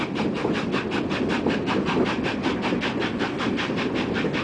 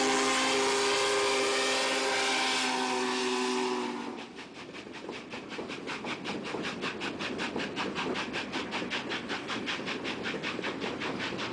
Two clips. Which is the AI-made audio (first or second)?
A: first